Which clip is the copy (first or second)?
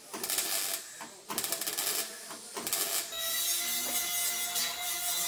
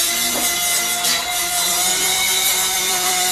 second